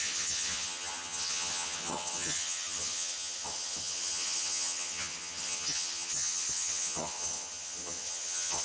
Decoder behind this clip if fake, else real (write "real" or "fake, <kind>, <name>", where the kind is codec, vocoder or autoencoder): fake, vocoder, HiFi-GAN